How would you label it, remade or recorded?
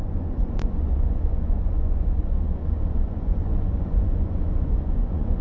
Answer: remade